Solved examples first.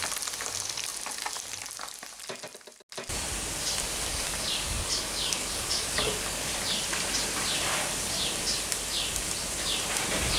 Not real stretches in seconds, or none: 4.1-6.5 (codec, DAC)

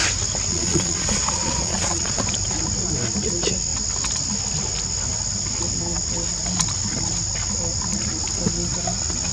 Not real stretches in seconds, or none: 0.5-2.2 (vocoder, Vocos)

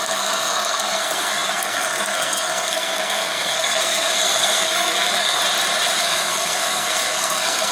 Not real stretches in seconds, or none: 0.0-5.4 (codec, SNAC); 6.0-7.7

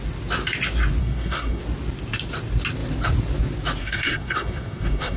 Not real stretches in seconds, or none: 1.0-1.6 (codec, SNAC); 3.8-5.2

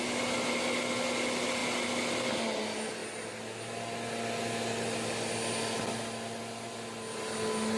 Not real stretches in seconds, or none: none

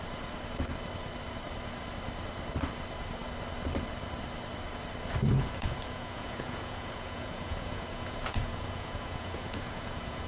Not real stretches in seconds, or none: 5.3-10.3 (vocoder, Vocos)

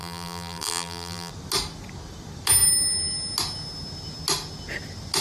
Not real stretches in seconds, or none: 0.0-1.3 (vocoder, BigVGAN v2)

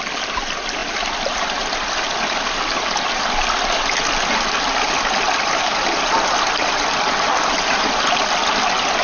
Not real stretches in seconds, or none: none